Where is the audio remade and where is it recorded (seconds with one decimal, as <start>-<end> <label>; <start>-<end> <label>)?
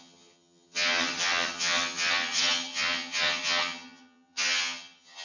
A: 0.0-5.2 remade